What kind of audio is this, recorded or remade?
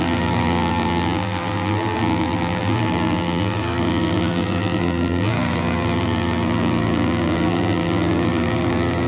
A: remade